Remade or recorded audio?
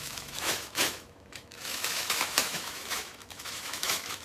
remade